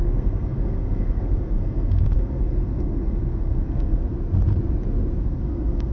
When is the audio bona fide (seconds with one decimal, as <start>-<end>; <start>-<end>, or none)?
4.0-5.2

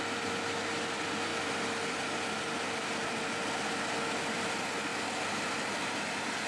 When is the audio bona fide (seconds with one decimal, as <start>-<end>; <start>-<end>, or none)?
0.0-6.5